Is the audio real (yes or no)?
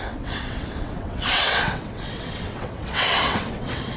no